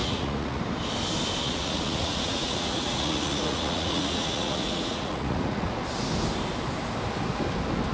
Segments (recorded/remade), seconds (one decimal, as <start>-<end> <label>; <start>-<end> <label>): 0.0-0.6 remade; 0.6-1.4 recorded; 1.4-5.7 remade; 5.7-7.9 recorded